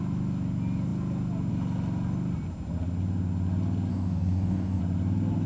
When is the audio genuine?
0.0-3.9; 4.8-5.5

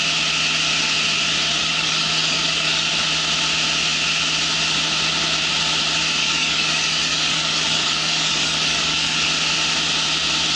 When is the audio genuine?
0.0-1.6; 2.9-6.2; 9.3-10.6

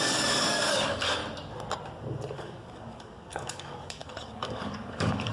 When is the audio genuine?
1.2-2.4

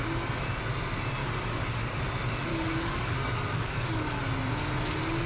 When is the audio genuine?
0.0-1.2; 2.0-2.5; 4.2-5.3

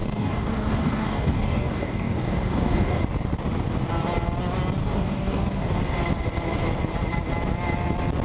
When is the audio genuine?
3.0-4.8; 5.8-8.2